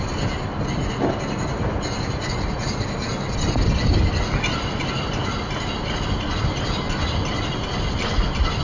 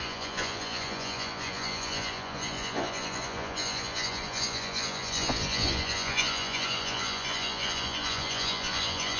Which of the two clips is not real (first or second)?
second